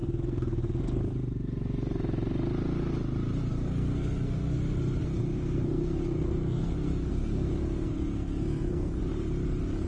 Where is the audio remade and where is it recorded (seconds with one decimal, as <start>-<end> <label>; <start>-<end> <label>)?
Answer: 0.0-1.0 remade; 1.0-3.5 recorded; 3.5-4.6 remade; 4.6-5.0 recorded; 5.0-9.0 remade; 9.0-9.9 recorded